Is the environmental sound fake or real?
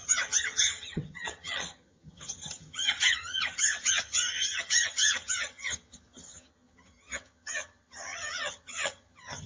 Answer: fake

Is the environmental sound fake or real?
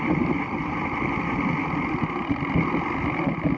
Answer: real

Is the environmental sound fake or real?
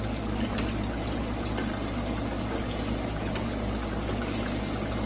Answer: real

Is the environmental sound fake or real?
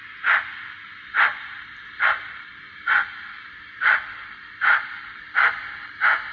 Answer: real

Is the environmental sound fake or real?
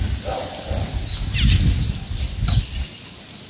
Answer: real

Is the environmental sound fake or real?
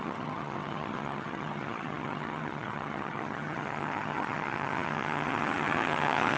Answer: fake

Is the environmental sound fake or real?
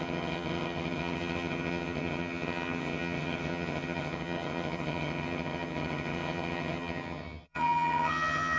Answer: fake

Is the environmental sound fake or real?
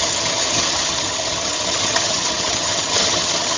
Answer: fake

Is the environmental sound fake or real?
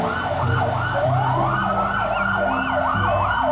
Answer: real